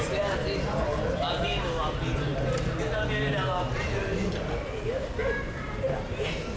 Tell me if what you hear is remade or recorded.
recorded